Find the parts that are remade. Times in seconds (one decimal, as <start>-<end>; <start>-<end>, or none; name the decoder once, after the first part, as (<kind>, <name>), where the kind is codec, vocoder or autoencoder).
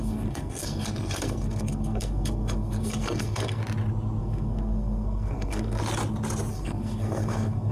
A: 0.0-3.6 (codec, SNAC); 4.2-5.8; 6.5-7.7